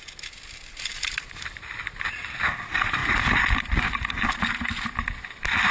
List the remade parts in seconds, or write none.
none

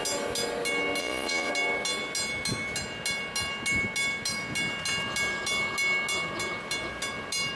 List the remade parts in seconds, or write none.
1.0-1.5 (vocoder, Vocos)